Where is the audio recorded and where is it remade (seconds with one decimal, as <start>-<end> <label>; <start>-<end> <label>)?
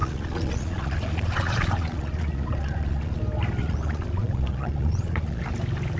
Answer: 0.0-3.2 remade; 3.2-3.6 recorded; 3.6-5.5 remade; 5.5-6.0 recorded